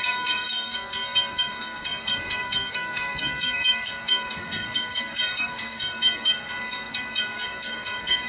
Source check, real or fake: fake